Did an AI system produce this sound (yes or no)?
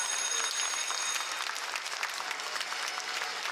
no